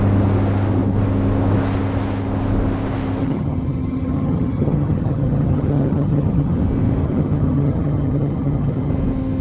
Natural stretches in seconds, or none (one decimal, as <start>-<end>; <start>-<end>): 0.0-3.2; 6.6-7.0; 8.9-9.4